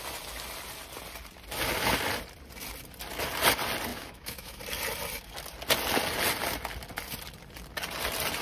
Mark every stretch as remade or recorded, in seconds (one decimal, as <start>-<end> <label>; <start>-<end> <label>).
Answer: 0.0-3.9 recorded; 3.9-4.6 remade; 4.6-8.4 recorded